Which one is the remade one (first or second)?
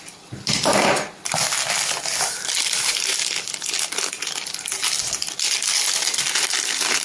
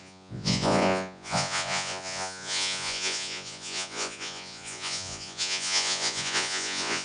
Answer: second